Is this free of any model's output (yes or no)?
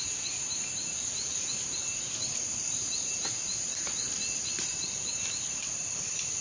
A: no